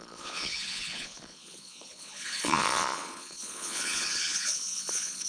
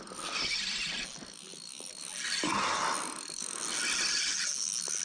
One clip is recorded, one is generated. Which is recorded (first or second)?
second